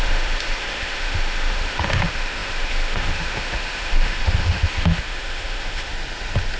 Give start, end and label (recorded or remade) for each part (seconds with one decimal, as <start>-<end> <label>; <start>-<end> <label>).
0.0-5.9 remade; 5.9-6.6 recorded